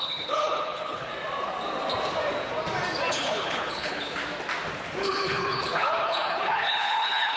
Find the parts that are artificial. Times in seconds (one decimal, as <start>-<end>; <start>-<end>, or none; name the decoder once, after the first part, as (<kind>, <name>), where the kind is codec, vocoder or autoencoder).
0.0-1.1 (codec, HILCodec); 3.1-4.2; 5.0-7.4